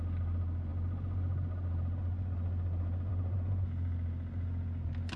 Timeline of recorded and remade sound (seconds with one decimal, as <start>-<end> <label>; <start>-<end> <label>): 0.0-5.2 recorded